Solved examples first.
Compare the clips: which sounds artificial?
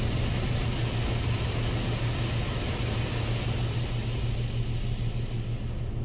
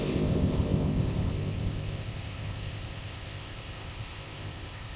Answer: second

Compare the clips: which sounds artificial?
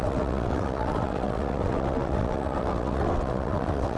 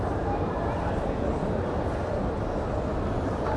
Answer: first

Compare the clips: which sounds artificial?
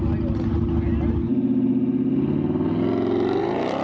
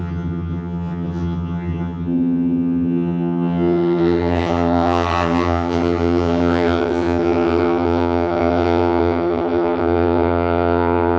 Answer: second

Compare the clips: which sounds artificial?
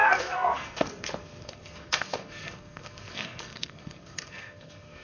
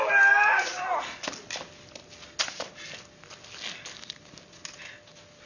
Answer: first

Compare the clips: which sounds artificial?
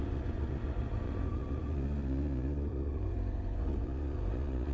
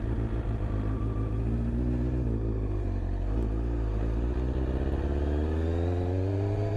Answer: first